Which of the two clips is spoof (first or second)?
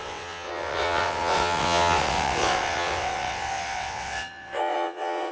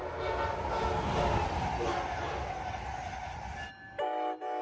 first